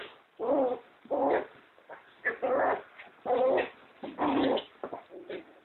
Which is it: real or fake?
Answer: real